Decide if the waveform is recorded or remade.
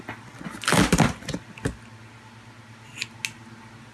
recorded